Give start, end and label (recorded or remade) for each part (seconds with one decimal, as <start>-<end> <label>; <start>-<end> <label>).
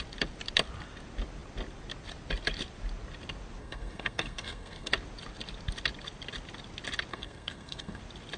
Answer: 0.0-3.6 recorded; 3.6-4.9 remade; 4.9-7.1 recorded; 7.1-8.0 remade; 8.0-8.4 recorded